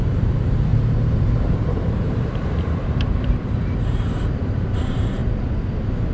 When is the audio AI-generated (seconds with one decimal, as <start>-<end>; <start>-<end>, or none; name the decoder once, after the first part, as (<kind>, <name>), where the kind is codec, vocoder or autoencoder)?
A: 0.0-5.2 (vocoder, BigVGAN v2)